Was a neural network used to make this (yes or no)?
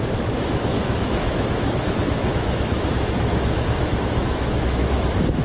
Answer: yes